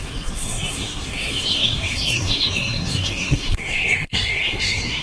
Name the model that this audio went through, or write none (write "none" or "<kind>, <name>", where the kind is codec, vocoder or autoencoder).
codec, SNAC